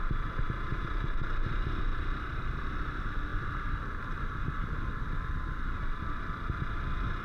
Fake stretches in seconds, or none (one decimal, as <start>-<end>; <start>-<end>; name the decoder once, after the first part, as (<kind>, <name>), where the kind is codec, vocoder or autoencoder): 1.9-2.6 (vocoder, BigVGAN v2)